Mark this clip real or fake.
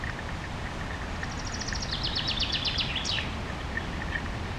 real